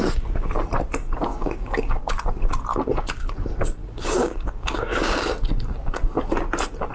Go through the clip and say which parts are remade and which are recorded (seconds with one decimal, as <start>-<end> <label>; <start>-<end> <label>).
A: 0.0-1.3 recorded; 1.3-2.0 remade; 2.0-3.8 recorded; 3.8-5.3 remade; 5.3-6.9 recorded